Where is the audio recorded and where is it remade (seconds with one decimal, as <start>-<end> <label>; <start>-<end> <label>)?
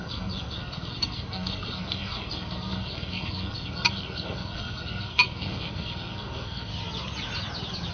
0.0-6.7 remade; 6.7-7.9 recorded